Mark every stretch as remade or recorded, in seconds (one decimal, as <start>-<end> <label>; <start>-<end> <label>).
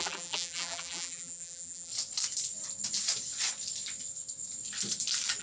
0.0-1.9 remade; 1.9-5.4 recorded